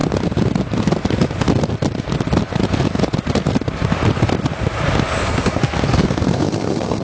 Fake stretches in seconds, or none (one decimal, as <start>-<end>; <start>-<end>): 5.2-7.0